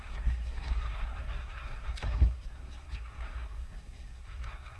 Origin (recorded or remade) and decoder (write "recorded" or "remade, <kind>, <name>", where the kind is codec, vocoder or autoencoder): remade, codec, SNAC